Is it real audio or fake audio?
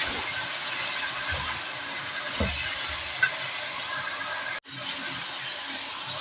real